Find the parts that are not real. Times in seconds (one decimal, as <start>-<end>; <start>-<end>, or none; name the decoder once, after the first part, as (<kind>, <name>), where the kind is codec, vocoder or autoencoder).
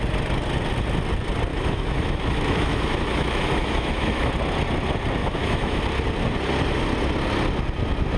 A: 1.5-4.3 (autoencoder, DAC-VAE); 5.2-5.8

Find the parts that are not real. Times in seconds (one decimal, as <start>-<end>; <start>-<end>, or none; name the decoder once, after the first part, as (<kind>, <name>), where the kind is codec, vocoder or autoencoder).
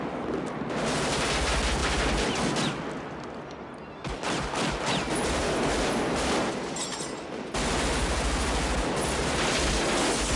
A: none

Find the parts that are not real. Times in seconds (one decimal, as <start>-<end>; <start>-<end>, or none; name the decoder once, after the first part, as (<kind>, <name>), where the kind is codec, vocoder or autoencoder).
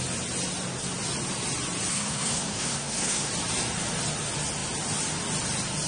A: 1.9-3.3 (codec, SNAC)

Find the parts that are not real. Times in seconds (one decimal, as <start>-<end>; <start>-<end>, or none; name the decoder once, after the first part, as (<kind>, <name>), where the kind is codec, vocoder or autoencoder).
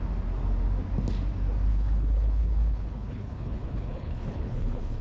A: 1.7-5.0 (codec, HILCodec)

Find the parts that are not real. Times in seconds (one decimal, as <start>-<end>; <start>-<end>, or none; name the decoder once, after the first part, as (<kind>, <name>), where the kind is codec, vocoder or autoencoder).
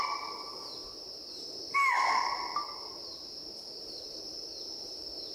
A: none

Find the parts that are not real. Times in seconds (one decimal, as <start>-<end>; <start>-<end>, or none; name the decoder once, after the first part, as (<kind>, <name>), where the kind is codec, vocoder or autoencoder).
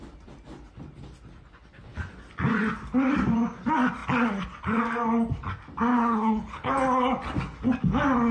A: 5.9-6.7 (codec, HILCodec)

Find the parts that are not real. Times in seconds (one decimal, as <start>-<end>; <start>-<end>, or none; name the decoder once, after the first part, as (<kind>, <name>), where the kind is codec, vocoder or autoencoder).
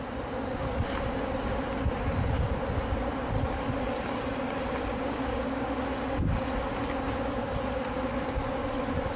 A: 4.9-5.8 (codec, DAC)